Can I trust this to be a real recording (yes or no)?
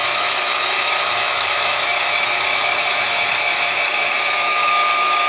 no